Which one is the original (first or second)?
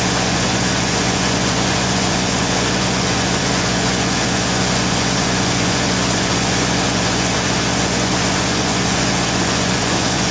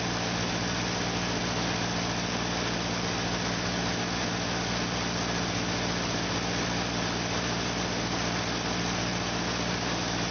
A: second